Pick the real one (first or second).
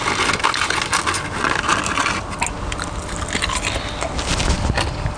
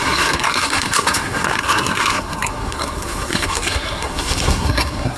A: first